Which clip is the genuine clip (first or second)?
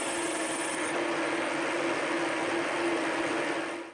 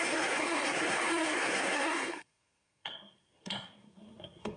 first